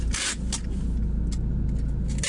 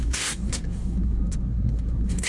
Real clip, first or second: first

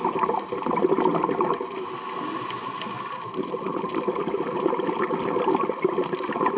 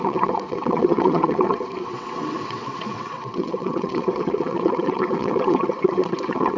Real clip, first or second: first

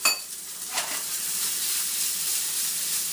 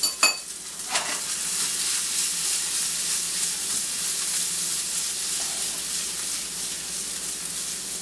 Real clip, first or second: second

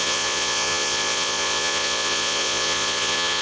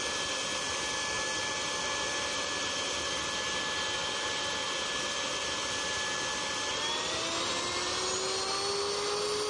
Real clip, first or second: second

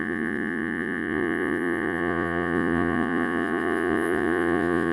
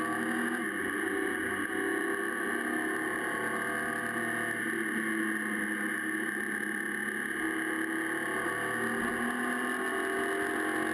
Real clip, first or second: second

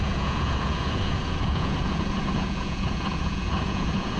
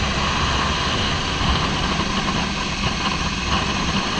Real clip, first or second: second